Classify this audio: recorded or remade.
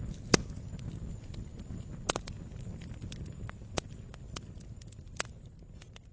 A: recorded